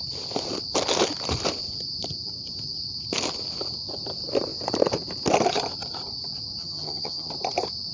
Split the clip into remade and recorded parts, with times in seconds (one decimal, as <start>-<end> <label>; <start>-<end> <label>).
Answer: 0.0-6.6 recorded; 6.6-7.3 remade; 7.3-7.9 recorded